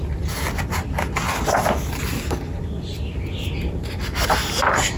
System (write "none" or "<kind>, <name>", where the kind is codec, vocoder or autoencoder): none